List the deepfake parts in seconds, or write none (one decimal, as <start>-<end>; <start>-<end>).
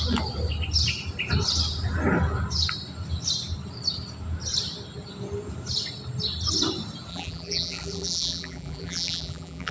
7.1-9.7